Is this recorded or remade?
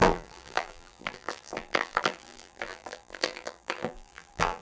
remade